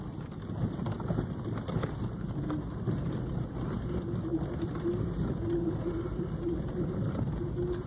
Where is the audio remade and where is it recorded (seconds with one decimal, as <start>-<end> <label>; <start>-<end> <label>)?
0.0-7.9 recorded